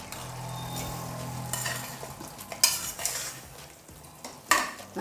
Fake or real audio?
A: real